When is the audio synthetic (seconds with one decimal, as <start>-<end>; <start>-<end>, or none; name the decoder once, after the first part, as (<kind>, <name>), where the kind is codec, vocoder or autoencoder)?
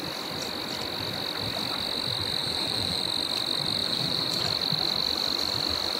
2.4-3.0 (vocoder, BigVGAN v2); 3.8-4.4